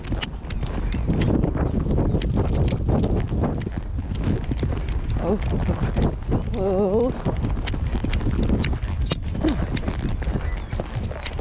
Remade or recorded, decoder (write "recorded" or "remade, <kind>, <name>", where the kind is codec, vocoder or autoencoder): recorded